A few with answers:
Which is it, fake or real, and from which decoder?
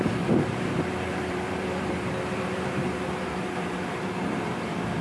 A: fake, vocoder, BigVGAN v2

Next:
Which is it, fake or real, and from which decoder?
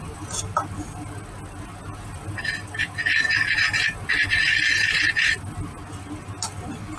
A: real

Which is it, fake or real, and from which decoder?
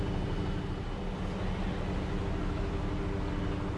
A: real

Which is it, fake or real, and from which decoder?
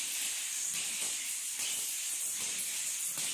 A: real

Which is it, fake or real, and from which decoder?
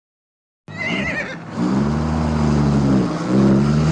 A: real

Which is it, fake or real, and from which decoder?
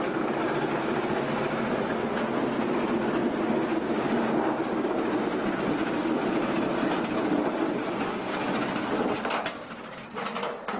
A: real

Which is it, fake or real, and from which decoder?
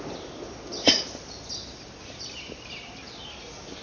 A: real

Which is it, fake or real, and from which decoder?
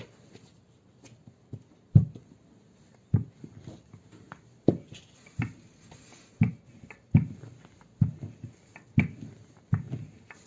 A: real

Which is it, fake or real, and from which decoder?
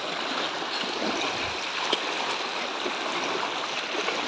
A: real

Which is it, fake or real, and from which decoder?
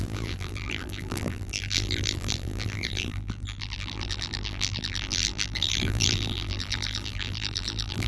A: fake, vocoder, BigVGAN v2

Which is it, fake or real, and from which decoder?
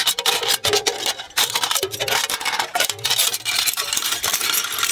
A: fake, vocoder, BigVGAN v2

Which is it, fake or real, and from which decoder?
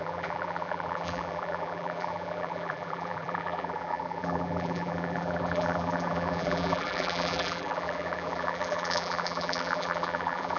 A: fake, vocoder, BigVGAN v2